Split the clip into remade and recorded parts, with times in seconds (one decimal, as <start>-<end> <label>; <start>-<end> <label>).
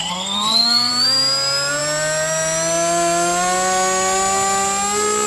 0.0-0.9 remade; 0.9-5.3 recorded